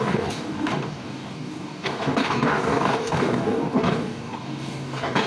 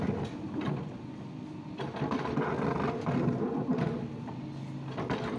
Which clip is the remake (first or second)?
first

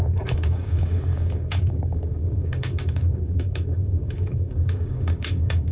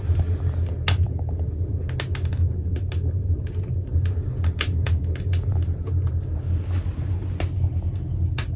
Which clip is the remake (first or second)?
first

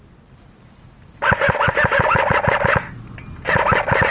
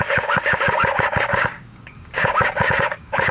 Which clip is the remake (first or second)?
second